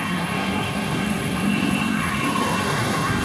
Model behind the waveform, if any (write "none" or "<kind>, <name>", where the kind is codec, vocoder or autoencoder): codec, SNAC